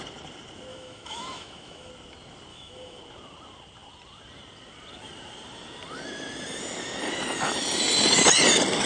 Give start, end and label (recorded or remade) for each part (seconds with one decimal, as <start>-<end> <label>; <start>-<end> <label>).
0.0-0.7 recorded; 0.7-1.9 remade; 1.9-2.5 recorded; 2.5-3.0 remade; 3.0-8.9 recorded